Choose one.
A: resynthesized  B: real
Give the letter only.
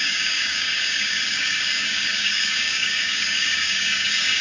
A